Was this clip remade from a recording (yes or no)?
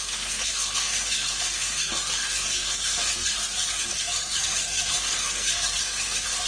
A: yes